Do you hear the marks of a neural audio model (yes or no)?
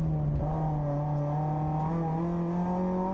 no